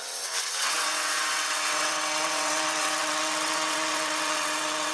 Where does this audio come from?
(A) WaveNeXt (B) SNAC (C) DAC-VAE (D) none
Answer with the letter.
A